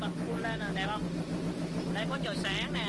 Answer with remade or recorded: recorded